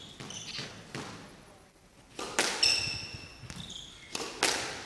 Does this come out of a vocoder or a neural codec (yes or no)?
no